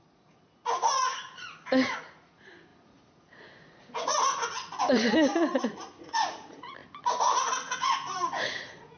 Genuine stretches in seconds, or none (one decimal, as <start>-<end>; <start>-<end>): none